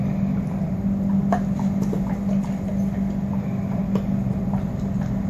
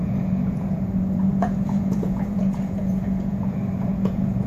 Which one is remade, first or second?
second